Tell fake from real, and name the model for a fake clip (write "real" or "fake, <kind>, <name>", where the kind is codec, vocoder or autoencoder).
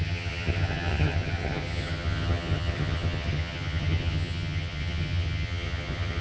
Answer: fake, vocoder, HiFi-GAN